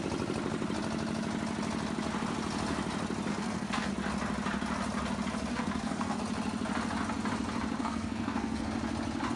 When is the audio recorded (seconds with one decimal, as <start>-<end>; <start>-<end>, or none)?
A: 0.0-3.3; 3.9-5.5; 6.2-7.8; 8.7-9.4